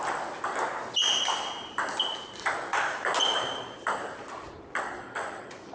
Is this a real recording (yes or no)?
yes